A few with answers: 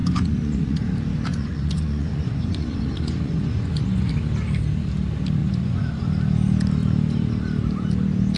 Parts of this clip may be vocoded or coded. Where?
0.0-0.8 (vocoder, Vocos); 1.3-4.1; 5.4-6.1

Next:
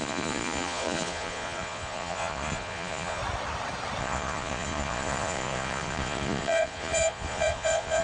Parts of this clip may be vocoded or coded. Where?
0.0-3.2 (vocoder, Vocos); 4.0-8.0

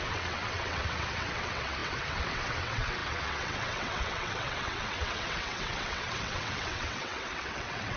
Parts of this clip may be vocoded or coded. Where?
0.0-8.0 (vocoder, WaveNeXt)